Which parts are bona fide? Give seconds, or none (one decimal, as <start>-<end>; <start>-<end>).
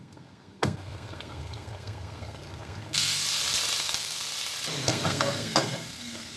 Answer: 3.2-3.8; 4.2-4.7